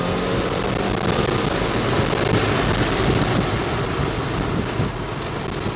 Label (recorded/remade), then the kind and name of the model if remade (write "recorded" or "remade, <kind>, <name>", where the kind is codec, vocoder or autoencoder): recorded